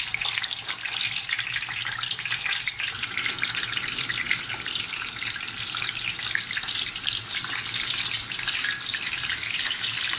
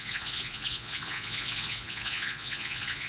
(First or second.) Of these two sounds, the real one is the first